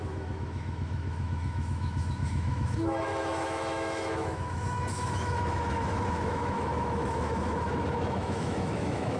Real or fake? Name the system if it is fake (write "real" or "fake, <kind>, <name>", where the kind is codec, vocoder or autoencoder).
fake, autoencoder, DAC-VAE